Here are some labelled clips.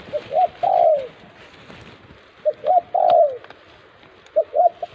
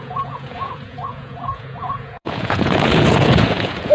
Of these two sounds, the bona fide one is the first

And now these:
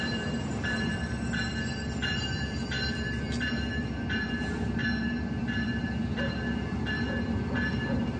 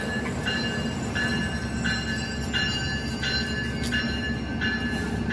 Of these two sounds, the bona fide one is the second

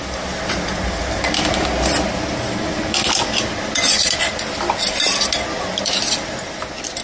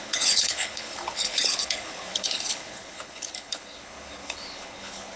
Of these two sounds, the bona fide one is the first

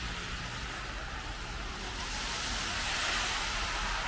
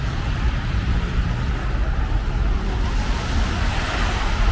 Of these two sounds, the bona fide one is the first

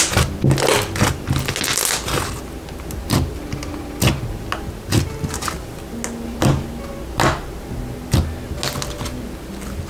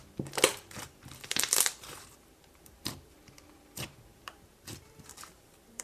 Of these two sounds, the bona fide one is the first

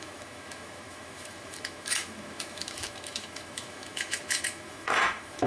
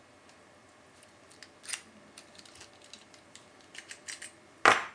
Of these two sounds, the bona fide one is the second